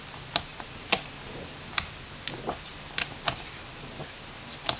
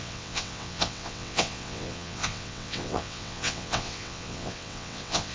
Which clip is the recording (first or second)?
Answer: first